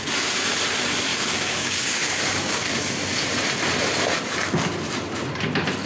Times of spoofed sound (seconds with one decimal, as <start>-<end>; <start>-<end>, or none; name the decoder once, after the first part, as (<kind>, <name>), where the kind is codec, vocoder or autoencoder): 1.1-2.9 (codec, DAC)